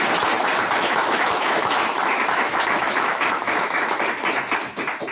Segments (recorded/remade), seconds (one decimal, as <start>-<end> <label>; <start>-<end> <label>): 0.0-0.8 recorded; 0.8-3.9 remade; 3.9-5.1 recorded